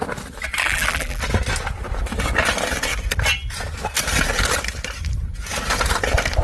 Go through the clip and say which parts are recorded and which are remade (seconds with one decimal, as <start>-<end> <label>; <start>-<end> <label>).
0.0-0.6 recorded; 0.6-1.2 remade; 1.2-6.4 recorded